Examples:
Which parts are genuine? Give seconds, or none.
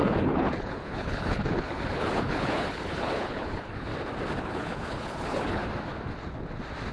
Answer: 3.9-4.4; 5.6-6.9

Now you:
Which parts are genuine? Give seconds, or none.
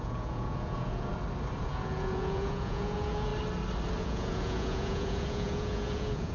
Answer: 1.1-1.6; 3.3-4.0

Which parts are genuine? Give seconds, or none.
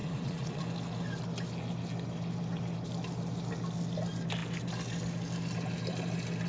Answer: 0.6-6.5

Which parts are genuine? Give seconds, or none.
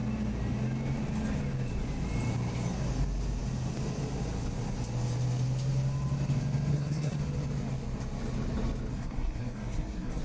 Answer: 0.0-6.7; 7.2-8.9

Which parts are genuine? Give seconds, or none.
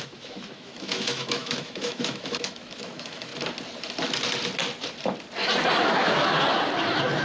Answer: 3.3-5.8; 6.3-7.2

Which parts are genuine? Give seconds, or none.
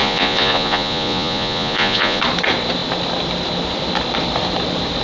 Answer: 2.2-5.0